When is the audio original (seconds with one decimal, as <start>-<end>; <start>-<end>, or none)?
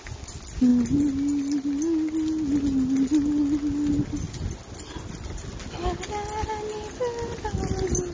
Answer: 0.0-8.1